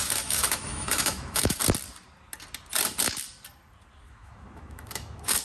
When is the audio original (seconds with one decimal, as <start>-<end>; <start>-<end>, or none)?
1.6-4.1